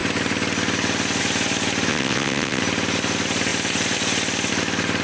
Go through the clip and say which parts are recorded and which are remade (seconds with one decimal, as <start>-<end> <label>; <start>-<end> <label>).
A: 0.0-1.9 recorded; 1.9-2.6 remade; 2.6-5.0 recorded